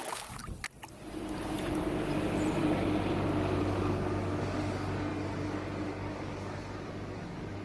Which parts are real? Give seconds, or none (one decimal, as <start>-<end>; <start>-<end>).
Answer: 0.4-3.6